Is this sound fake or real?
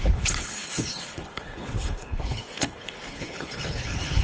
fake